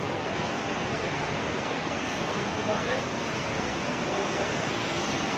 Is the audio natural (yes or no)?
no